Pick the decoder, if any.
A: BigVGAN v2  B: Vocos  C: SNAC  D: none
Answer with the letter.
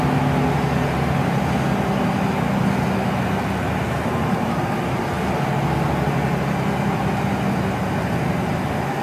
D